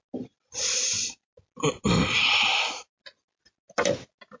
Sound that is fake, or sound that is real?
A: real